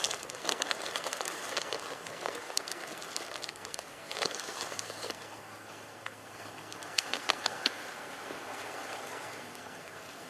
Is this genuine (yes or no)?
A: no